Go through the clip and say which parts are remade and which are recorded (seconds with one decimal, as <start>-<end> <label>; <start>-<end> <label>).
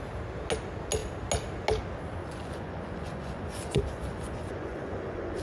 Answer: 0.0-2.2 recorded; 2.2-5.4 remade